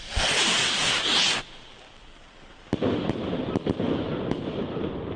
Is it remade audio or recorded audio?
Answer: recorded